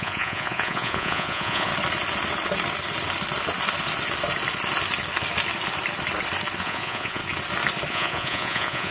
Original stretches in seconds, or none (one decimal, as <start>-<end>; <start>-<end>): 1.7-6.6; 7.2-7.9